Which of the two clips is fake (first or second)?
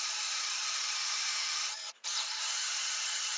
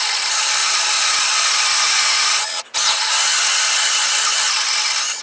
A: first